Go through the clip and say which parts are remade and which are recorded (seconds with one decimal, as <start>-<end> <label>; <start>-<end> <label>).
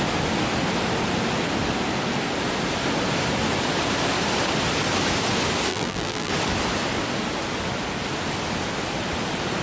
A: 0.0-5.7 recorded; 5.7-6.3 remade; 6.3-9.6 recorded